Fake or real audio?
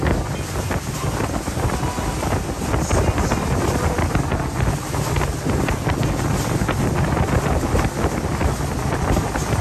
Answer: real